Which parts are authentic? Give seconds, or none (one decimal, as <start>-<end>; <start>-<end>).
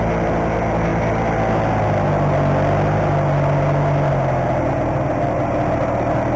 0.0-6.4